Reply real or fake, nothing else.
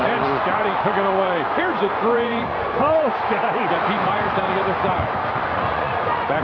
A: fake